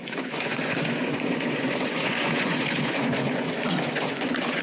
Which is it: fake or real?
fake